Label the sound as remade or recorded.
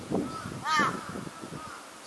recorded